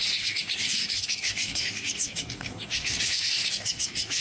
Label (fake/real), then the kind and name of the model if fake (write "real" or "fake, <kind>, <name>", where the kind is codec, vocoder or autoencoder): fake, codec, DAC